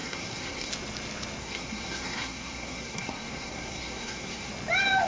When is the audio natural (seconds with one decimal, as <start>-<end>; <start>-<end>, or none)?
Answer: 0.7-1.4; 4.5-5.1